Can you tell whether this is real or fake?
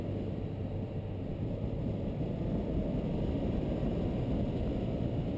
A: real